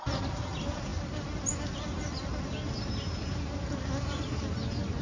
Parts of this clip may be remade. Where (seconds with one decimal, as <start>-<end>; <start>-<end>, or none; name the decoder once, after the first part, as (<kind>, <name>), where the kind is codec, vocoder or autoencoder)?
none